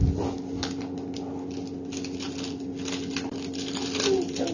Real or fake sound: real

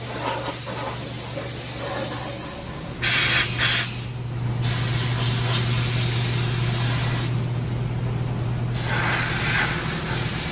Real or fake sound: real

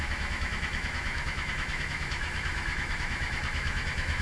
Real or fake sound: fake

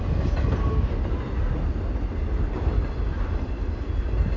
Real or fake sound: real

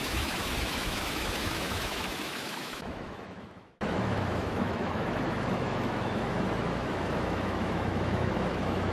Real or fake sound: fake